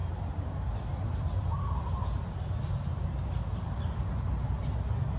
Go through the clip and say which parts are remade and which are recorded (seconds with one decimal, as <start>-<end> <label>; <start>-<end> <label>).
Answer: 0.0-5.2 recorded